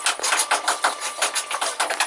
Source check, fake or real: real